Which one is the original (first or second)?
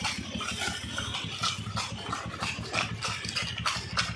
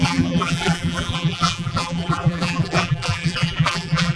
first